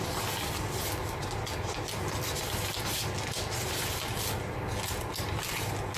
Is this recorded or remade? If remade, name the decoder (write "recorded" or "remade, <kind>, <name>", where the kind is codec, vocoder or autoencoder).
recorded